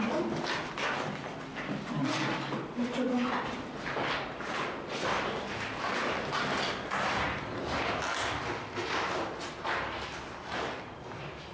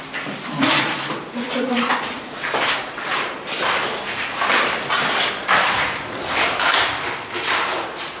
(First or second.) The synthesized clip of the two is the second